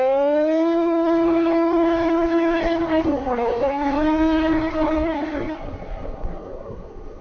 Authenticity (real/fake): fake